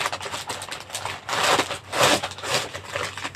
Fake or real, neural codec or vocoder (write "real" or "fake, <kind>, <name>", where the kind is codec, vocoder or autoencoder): real